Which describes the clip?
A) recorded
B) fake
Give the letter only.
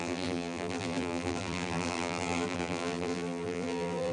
B